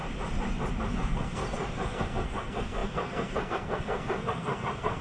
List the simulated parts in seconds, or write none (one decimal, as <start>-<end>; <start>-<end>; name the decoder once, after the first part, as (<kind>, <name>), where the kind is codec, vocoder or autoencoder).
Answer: 0.9-1.4 (codec, SNAC); 1.9-5.0